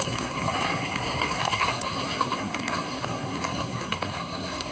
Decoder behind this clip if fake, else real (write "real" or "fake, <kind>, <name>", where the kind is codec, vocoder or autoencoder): fake, codec, SNAC